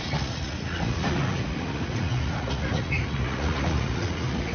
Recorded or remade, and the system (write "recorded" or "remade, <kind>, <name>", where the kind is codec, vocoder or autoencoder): remade, vocoder, Vocos